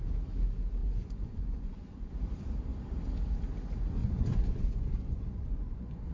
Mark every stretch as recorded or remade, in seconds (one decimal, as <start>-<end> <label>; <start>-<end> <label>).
0.0-0.8 recorded; 0.8-2.1 remade; 2.1-4.0 recorded; 4.0-6.1 remade